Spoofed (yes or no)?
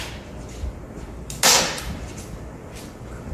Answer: no